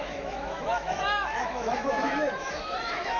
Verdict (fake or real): fake